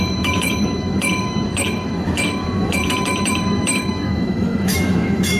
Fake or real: fake